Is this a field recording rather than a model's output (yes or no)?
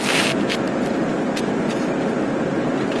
yes